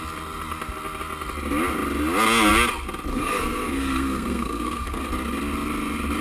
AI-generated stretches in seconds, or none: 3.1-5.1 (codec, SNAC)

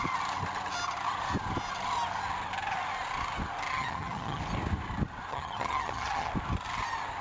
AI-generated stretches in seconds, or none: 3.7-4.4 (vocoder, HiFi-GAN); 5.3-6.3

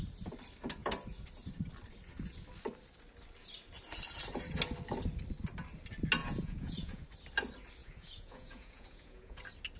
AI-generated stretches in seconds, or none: 6.2-7.0 (vocoder, Vocos); 7.8-9.4